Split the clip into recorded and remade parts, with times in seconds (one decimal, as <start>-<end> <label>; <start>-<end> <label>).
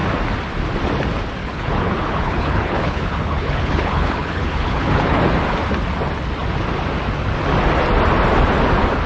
0.0-1.4 recorded; 1.4-5.2 remade; 5.2-9.1 recorded